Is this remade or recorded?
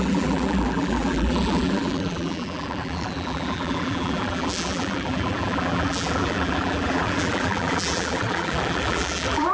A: remade